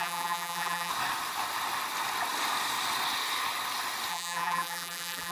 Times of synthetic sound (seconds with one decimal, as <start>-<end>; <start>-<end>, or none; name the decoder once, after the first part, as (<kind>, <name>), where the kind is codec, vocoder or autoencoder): 0.0-0.9 (vocoder, BigVGAN v2); 4.1-5.3